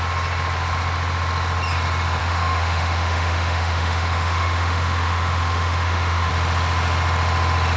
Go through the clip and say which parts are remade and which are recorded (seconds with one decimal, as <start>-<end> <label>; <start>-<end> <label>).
0.0-2.2 recorded; 2.2-6.3 remade; 6.3-7.8 recorded